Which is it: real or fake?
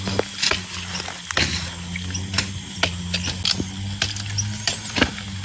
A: real